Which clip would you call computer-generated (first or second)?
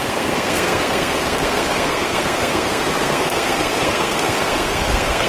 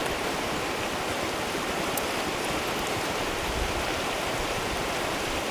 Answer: first